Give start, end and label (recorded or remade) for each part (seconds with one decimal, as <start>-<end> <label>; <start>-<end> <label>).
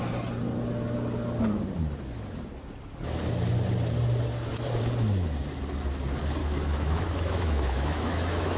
0.0-6.4 recorded; 6.4-8.6 remade